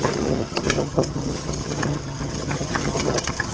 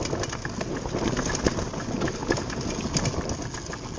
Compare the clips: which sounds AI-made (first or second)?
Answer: first